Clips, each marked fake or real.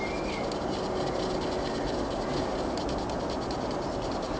real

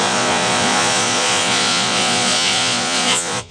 fake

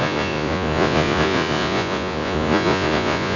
fake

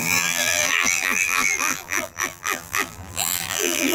fake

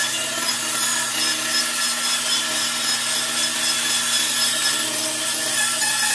real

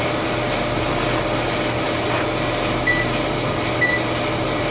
real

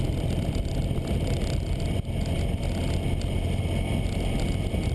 real